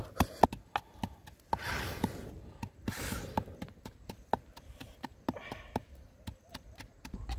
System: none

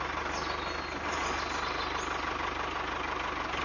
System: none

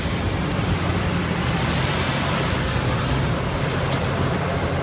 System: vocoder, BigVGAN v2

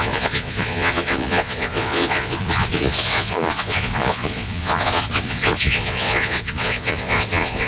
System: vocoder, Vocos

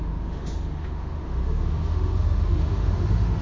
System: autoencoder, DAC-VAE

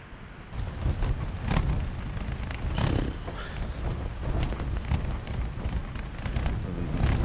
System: none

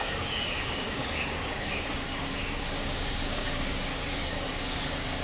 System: codec, DAC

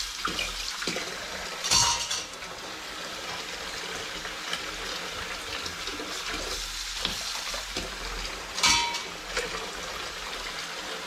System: none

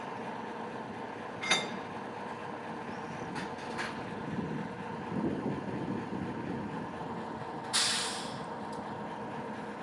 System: none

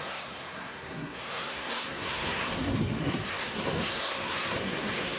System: codec, SNAC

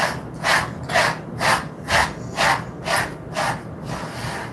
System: none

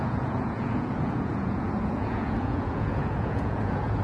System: vocoder, Vocos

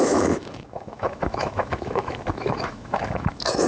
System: autoencoder, DAC-VAE